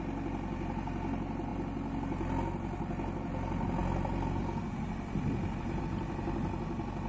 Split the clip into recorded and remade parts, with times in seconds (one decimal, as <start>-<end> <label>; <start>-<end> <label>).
0.0-7.1 recorded